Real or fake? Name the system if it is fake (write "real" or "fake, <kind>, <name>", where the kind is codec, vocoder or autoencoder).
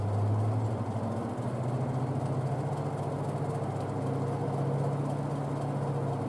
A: real